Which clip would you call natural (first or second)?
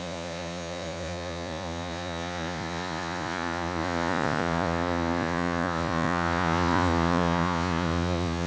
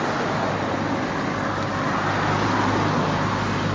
second